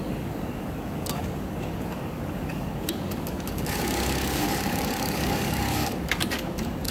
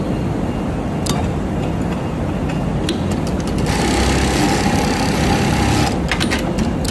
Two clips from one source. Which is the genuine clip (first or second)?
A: second